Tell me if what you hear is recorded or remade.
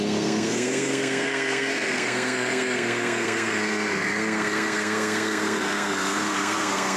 remade